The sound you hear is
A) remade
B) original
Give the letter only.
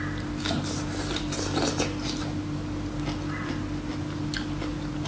B